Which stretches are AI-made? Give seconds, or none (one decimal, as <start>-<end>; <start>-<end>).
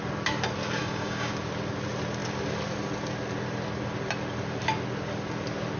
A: 0.8-1.3